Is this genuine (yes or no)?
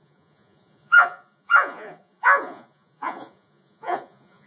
no